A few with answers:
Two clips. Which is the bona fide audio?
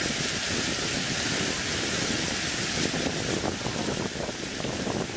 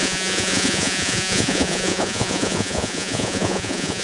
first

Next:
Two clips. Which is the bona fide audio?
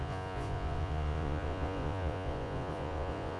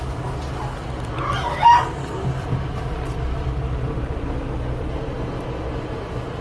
second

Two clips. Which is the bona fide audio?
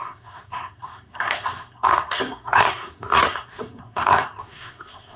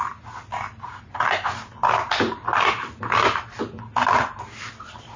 second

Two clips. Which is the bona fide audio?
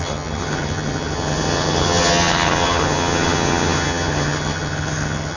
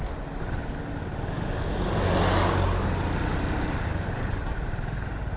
second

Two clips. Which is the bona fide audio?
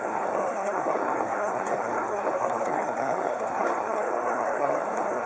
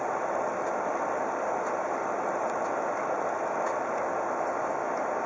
second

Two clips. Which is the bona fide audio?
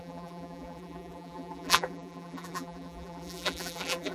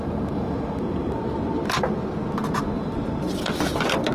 second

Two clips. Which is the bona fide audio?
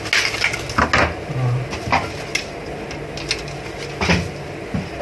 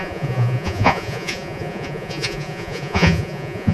first